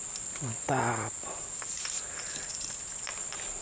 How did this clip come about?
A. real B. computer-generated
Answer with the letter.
A